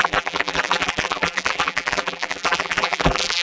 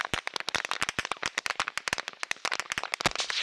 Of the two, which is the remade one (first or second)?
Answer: first